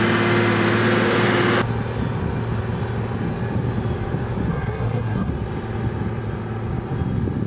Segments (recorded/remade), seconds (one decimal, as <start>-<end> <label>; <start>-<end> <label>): 0.0-4.5 recorded; 4.5-5.3 remade; 5.3-7.5 recorded